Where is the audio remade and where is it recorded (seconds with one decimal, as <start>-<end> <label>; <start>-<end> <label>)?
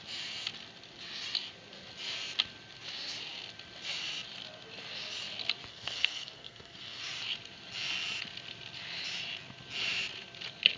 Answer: 0.0-5.7 recorded; 5.7-7.0 remade; 7.0-10.8 recorded